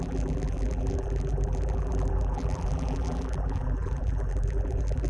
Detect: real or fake fake